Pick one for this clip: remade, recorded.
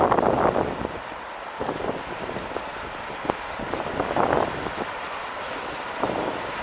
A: remade